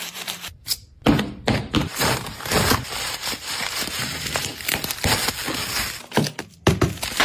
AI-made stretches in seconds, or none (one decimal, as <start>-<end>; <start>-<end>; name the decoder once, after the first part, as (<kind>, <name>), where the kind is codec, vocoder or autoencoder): 0.0-4.5 (vocoder, BigVGAN v2)